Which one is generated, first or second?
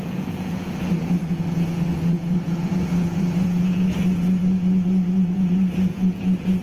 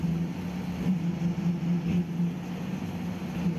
first